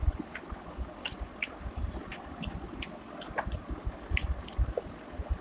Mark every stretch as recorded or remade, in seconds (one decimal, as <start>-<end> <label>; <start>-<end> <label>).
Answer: 0.0-5.4 recorded